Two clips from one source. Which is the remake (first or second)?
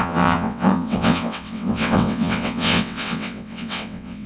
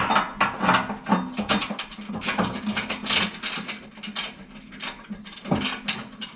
first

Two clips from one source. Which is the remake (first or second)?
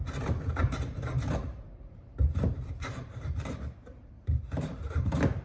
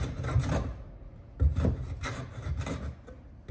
first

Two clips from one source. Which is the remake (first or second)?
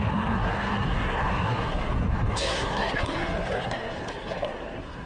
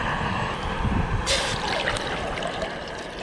first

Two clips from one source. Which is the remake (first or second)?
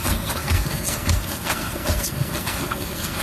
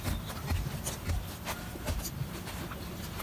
first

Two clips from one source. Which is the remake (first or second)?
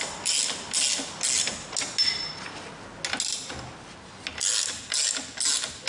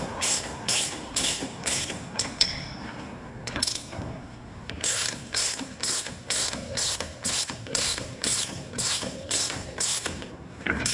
second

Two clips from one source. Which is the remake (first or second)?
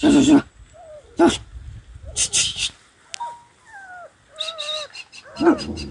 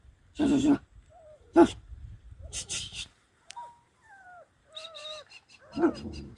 second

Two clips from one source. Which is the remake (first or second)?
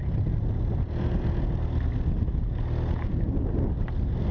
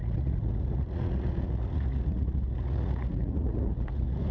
second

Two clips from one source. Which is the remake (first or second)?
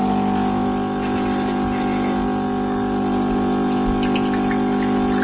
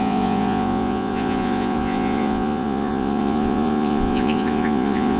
second